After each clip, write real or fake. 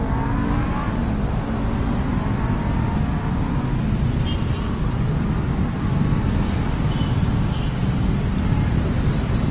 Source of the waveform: real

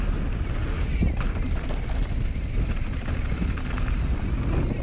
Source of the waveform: real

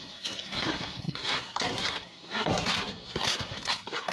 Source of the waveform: fake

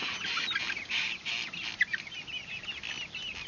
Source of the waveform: real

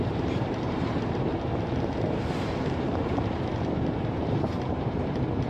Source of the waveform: fake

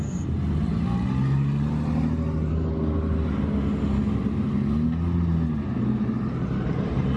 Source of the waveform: real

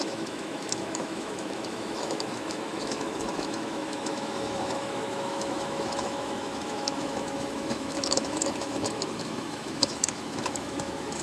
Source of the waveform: fake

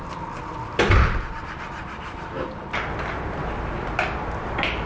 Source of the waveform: real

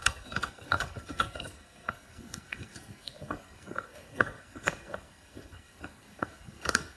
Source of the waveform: fake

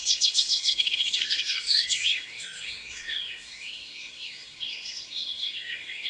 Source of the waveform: fake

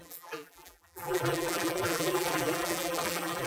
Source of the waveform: fake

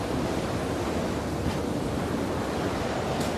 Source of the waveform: real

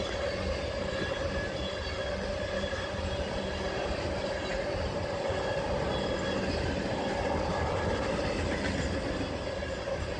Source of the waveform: real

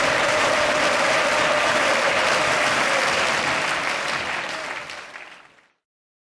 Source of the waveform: fake